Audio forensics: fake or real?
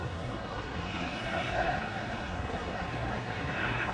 fake